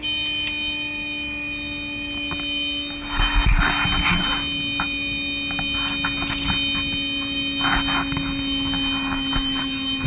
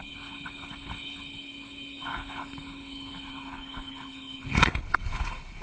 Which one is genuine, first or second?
first